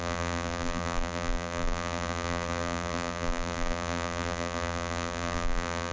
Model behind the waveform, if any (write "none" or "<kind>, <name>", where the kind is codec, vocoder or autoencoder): vocoder, BigVGAN v2